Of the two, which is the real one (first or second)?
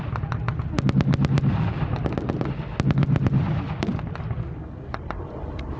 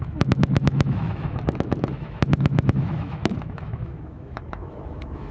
first